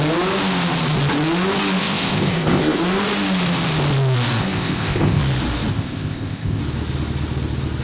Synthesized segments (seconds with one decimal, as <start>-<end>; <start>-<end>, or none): 1.8-2.8; 4.4-5.2; 5.7-6.6